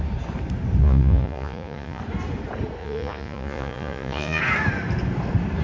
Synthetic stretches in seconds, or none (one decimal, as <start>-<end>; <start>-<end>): 0.8-2.0; 2.8-4.4